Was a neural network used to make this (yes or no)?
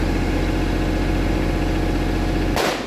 no